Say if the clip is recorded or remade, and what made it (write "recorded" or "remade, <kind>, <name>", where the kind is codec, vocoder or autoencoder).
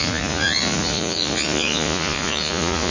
remade, vocoder, Vocos